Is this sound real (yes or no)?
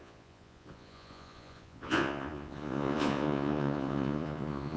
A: no